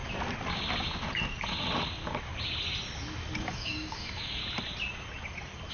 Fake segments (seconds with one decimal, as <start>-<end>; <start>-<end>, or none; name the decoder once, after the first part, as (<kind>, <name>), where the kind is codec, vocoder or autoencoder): 3.4-4.4 (codec, DAC)